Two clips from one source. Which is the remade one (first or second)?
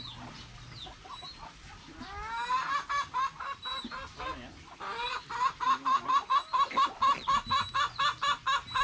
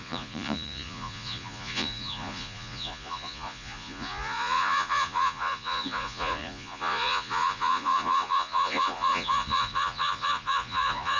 second